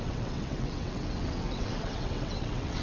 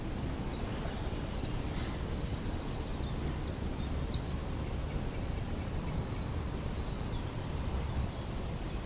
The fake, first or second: first